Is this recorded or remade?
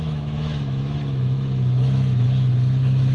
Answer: remade